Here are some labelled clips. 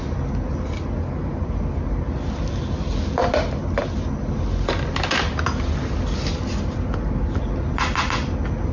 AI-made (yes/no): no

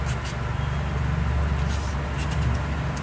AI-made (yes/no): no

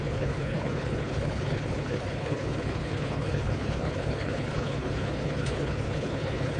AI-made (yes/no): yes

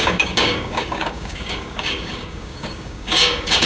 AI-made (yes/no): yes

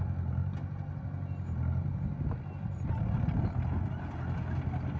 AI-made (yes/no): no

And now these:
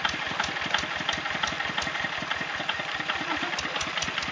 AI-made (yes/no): no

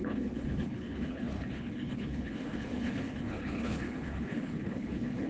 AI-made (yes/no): yes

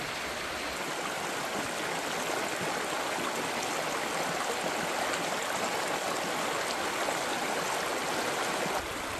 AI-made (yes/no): no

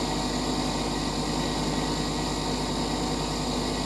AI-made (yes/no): no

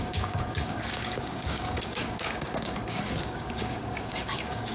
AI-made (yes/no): yes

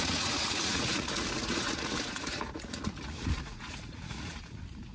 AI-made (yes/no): yes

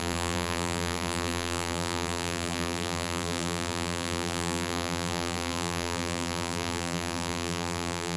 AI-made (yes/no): yes